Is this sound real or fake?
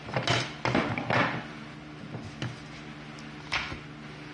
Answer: real